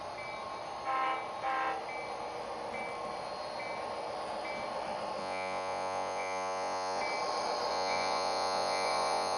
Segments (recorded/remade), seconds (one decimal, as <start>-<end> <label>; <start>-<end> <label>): 0.0-5.2 recorded; 5.2-7.0 remade; 7.0-7.7 recorded; 7.7-9.4 remade